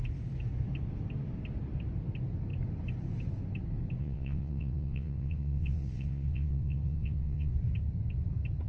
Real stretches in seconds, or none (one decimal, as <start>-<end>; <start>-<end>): 0.0-4.0; 7.5-8.7